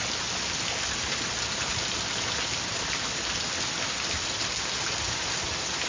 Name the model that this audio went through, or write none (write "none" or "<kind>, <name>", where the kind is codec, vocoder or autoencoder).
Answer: none